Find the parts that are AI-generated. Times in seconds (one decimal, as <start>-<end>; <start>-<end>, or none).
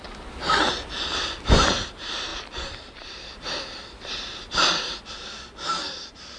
0.0-6.4